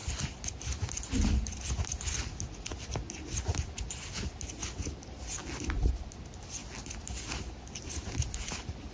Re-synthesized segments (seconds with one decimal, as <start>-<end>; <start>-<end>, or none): none